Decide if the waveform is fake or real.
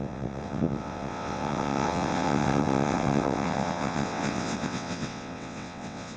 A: fake